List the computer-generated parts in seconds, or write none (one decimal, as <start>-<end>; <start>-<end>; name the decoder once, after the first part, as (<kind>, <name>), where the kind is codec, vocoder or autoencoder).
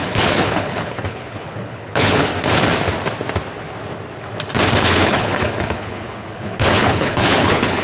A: 0.0-2.3 (codec, HILCodec); 4.9-7.8